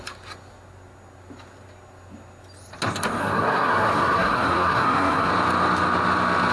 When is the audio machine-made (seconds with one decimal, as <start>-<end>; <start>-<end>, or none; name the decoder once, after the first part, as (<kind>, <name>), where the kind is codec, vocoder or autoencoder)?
3.2-5.3 (codec, SNAC)